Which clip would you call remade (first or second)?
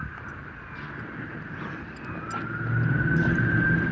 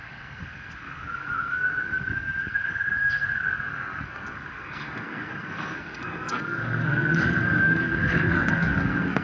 second